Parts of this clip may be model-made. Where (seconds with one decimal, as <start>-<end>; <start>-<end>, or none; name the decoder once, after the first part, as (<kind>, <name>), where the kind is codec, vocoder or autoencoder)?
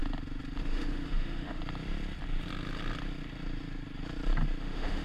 0.6-1.6 (autoencoder, DAC-VAE); 4.6-5.0